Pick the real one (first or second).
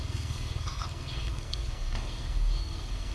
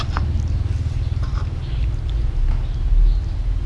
second